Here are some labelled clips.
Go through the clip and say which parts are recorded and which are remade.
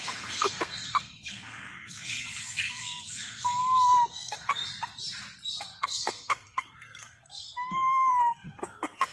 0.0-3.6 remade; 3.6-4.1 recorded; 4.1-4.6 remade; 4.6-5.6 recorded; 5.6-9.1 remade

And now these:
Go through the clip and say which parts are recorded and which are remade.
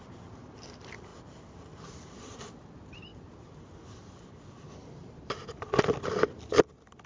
0.0-1.1 recorded; 1.1-2.5 remade; 2.5-3.1 recorded; 3.1-6.6 remade; 6.6-7.1 recorded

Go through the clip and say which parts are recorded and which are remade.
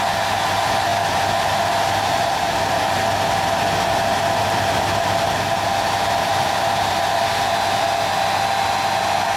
0.0-6.3 recorded; 6.3-7.0 remade; 7.0-9.4 recorded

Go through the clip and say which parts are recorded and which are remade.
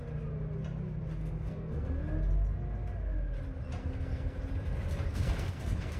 0.0-1.2 recorded; 1.2-2.0 remade; 2.0-3.8 recorded; 3.8-4.4 remade; 4.4-5.1 recorded; 5.1-6.0 remade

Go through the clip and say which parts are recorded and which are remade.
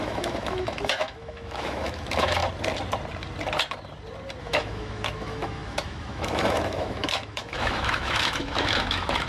0.0-2.4 remade; 2.4-4.4 recorded; 4.4-9.3 remade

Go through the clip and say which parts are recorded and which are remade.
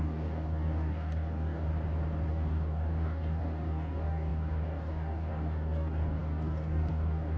0.0-1.7 remade; 1.7-2.3 recorded; 2.3-7.4 remade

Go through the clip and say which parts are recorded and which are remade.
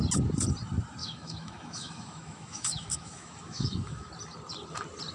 0.0-1.0 recorded; 1.0-4.1 remade; 4.1-5.1 recorded